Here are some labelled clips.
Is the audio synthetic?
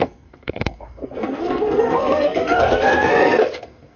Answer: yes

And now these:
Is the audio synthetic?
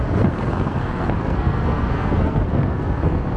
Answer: yes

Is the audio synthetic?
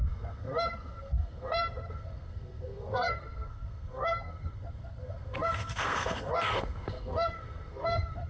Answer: yes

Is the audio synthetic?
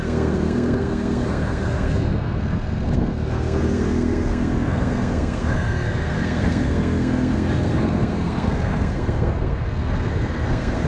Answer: yes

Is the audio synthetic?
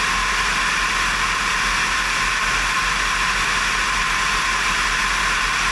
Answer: no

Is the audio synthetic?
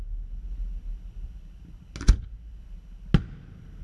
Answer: no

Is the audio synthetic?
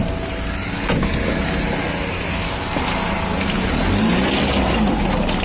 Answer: no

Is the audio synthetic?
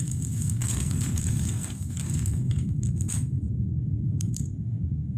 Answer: yes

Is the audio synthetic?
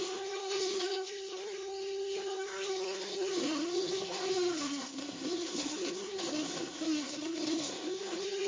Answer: yes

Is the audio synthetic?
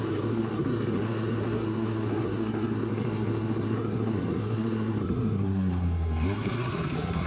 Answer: yes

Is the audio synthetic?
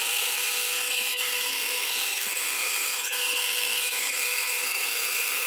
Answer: yes